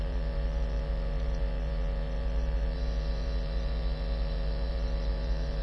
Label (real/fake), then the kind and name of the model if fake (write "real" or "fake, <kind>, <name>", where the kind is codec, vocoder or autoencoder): fake, vocoder, Vocos